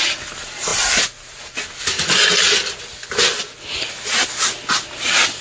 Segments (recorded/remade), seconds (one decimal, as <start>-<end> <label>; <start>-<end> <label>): 0.0-5.4 recorded